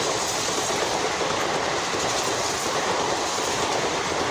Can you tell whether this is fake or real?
real